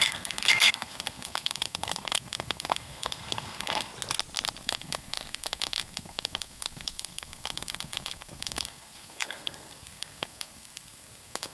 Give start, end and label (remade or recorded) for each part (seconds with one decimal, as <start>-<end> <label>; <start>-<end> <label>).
0.0-3.9 remade; 3.9-4.6 recorded; 4.6-11.5 remade